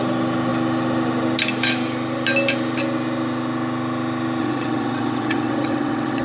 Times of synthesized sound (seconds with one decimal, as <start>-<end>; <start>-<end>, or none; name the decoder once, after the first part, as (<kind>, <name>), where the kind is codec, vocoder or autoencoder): 4.4-6.2 (vocoder, WaveNeXt)